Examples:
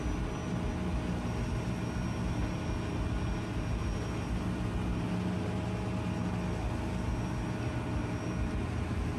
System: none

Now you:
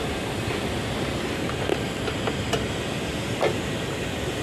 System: none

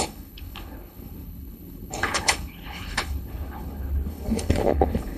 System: codec, HILCodec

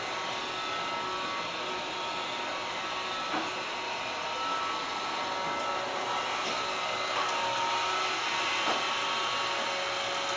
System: none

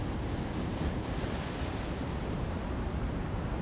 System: none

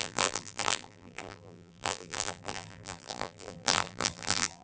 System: vocoder, BigVGAN v2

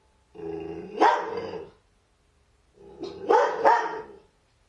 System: none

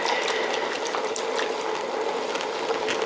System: none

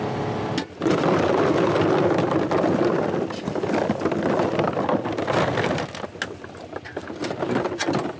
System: none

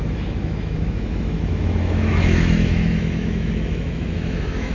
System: autoencoder, DAC-VAE